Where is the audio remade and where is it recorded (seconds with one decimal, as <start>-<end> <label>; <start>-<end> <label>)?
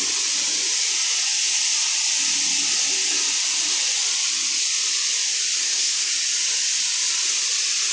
0.0-5.6 recorded; 5.6-6.1 remade; 6.1-7.9 recorded